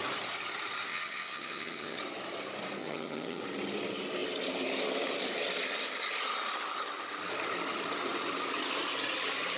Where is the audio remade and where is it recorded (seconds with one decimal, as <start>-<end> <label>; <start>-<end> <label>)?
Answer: 0.0-0.9 recorded; 0.9-2.0 remade; 2.0-2.8 recorded; 2.8-3.4 remade; 3.4-9.6 recorded